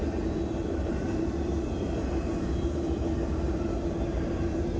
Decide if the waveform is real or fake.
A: real